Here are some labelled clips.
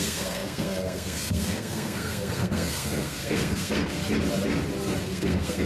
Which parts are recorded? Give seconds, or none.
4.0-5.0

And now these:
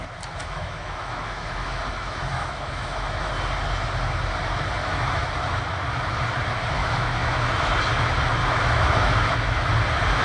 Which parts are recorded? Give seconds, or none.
0.0-0.4; 3.3-4.8; 5.3-6.8; 7.8-8.4; 9.7-10.2

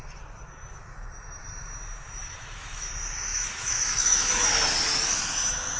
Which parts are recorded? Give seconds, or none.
0.0-2.2; 2.9-3.3; 4.3-5.8

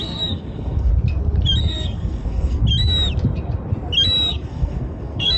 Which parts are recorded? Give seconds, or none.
0.9-1.6; 2.6-4.3

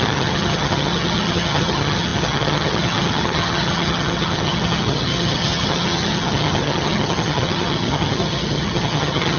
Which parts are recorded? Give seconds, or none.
none